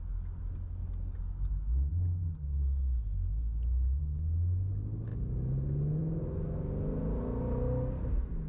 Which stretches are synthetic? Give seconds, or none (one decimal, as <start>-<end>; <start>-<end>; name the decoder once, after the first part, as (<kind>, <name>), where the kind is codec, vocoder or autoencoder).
none